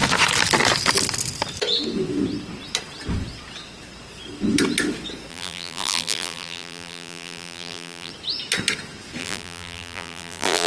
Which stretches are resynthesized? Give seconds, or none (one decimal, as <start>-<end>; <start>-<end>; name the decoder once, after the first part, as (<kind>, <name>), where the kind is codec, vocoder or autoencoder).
5.3-8.1 (vocoder, BigVGAN v2); 9.2-10.7